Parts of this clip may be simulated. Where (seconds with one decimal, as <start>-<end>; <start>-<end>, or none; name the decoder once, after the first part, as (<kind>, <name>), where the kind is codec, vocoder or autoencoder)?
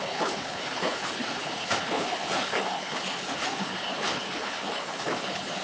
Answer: 0.0-5.6 (codec, HILCodec)